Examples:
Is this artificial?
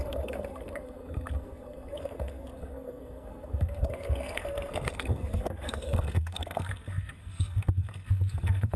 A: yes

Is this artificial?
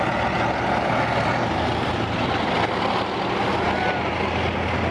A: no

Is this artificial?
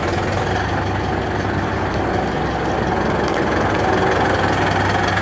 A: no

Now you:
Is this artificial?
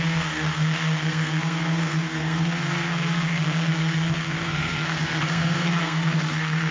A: yes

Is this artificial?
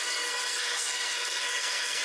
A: yes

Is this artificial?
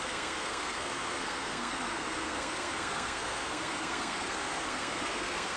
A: yes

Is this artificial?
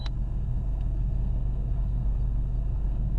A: yes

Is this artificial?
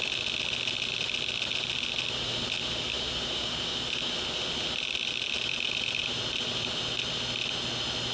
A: no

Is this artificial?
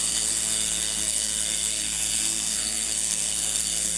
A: yes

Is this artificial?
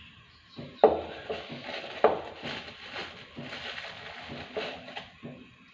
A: no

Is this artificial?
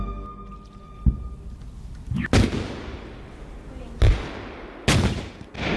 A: no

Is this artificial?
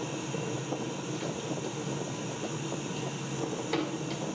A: no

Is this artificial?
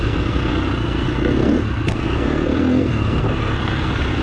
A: yes